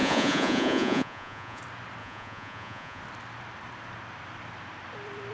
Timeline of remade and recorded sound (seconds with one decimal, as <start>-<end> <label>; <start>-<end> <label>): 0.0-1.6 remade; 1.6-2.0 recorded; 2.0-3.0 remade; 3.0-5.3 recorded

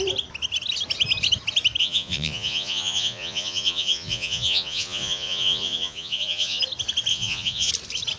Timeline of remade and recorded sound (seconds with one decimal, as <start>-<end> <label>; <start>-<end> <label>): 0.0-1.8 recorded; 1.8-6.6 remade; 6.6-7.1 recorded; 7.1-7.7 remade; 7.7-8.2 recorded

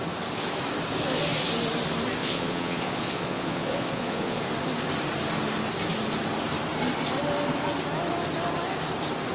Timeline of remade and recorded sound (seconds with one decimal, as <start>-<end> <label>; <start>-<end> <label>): 0.0-2.2 recorded; 2.2-4.4 remade; 4.4-9.3 recorded